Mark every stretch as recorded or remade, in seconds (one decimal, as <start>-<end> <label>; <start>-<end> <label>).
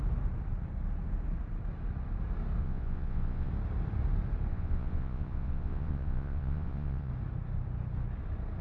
0.0-2.6 recorded; 2.6-3.5 remade; 3.5-4.5 recorded; 4.5-7.1 remade; 7.1-8.6 recorded